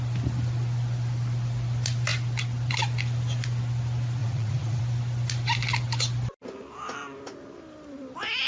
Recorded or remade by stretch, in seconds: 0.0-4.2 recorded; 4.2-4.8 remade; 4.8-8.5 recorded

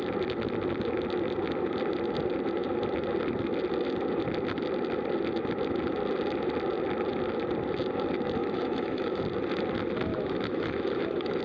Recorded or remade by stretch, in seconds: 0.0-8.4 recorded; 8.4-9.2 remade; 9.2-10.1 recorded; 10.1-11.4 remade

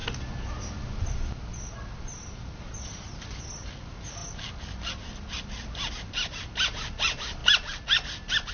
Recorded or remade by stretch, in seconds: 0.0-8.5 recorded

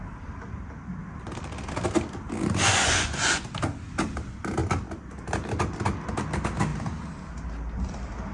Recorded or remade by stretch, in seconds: 0.0-2.7 recorded; 2.7-3.5 remade; 3.5-8.3 recorded

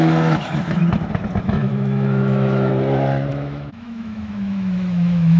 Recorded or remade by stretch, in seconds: 0.0-0.8 remade; 0.8-1.4 recorded; 1.4-2.7 remade; 2.7-3.3 recorded; 3.3-5.4 remade

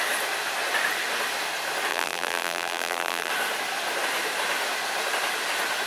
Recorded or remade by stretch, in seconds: 0.0-1.9 recorded; 1.9-3.3 remade; 3.3-5.9 recorded